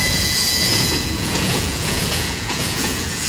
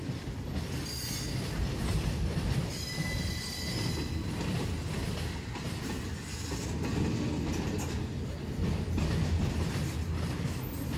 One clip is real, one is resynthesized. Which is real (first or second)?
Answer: second